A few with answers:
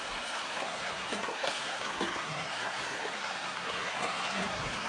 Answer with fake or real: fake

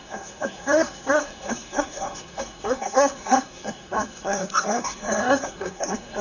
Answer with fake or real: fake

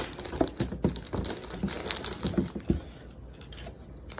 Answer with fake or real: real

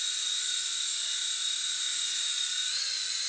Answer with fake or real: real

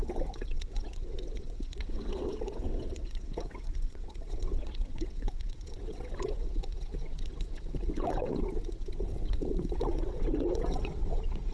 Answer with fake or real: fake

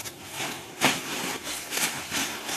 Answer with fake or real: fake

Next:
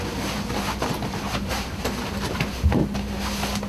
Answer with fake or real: real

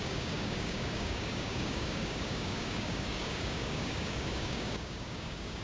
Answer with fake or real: fake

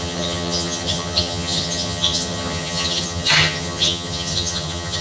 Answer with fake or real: fake